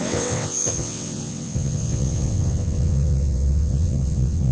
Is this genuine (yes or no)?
no